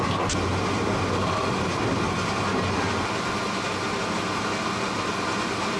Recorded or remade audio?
recorded